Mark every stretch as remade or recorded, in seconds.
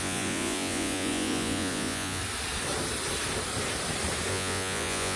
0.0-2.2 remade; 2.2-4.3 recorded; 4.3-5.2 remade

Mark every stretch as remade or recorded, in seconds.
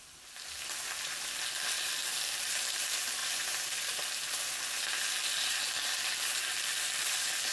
0.0-7.5 recorded